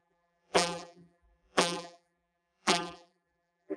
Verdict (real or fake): fake